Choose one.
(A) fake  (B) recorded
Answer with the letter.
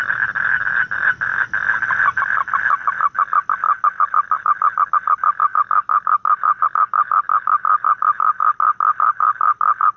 B